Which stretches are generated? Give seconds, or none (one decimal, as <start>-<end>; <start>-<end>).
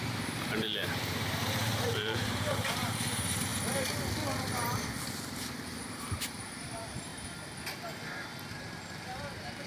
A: 0.0-3.5; 5.1-7.1; 8.5-9.7